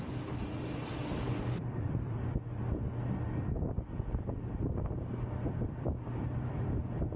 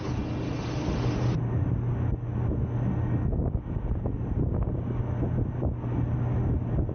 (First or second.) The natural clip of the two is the second